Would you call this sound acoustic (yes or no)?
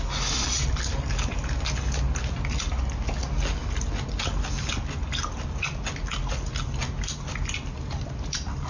yes